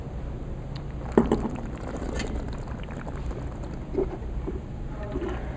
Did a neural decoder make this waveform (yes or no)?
no